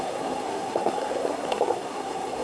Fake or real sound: fake